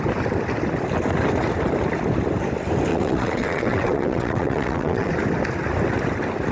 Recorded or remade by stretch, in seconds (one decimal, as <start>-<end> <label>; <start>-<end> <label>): 0.0-2.9 recorded; 2.9-5.1 remade; 5.1-6.5 recorded